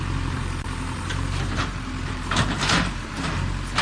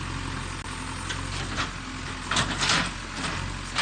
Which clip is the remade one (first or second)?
first